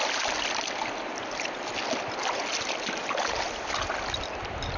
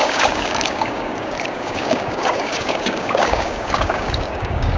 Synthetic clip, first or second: second